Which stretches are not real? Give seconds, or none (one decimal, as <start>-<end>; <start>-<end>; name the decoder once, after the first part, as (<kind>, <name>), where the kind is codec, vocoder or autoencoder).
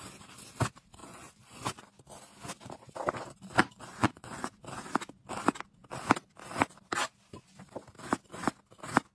1.0-2.0 (vocoder, Vocos); 3.6-4.6